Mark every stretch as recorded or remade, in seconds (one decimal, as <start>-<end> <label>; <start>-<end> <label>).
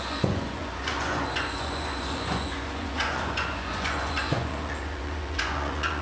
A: 0.0-6.0 remade